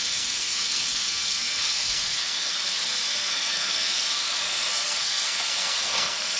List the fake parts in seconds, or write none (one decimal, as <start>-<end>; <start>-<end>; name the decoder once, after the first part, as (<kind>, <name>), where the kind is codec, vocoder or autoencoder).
0.0-6.4 (codec, SNAC)